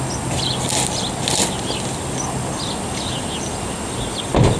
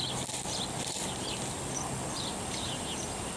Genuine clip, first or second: first